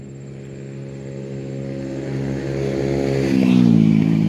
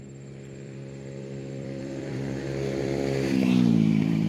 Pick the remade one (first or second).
second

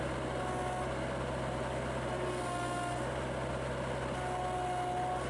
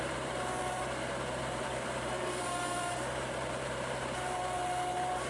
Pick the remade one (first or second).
second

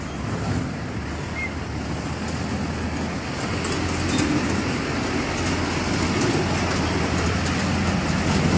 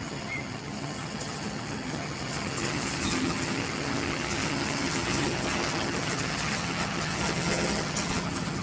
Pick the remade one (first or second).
second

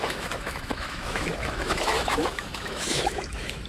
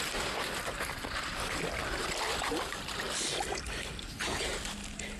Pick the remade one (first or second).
first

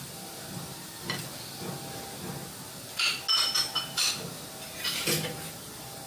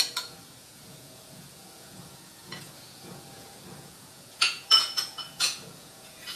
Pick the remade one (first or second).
second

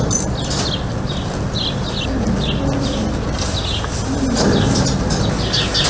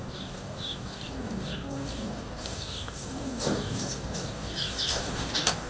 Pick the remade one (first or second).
second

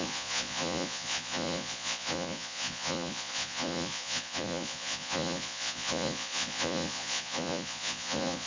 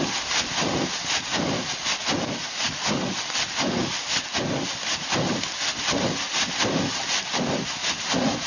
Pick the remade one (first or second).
first